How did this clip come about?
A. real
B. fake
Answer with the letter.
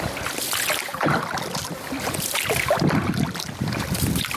A